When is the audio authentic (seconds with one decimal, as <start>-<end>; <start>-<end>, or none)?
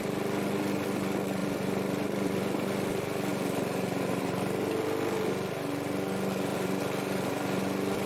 0.0-1.4; 2.4-6.5; 7.6-8.1